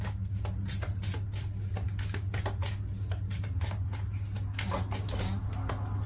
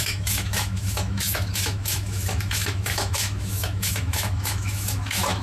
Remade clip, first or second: second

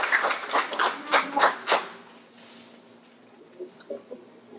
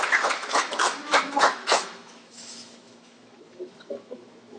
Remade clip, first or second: second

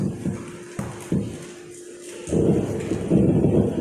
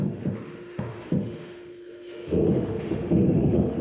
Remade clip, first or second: second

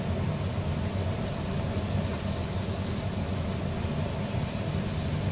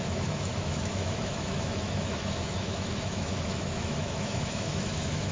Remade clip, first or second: second